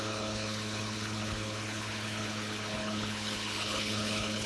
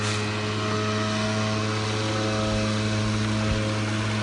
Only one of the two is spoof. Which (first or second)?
first